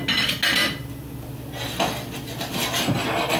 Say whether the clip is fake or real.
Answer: real